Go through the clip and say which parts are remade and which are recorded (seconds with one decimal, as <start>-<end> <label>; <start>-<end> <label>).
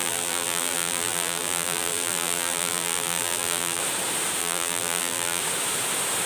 0.0-3.8 remade; 3.8-4.4 recorded; 4.4-5.4 remade; 5.4-6.3 recorded